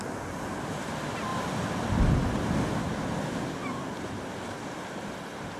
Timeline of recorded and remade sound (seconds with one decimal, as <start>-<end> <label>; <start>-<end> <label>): 0.0-5.6 recorded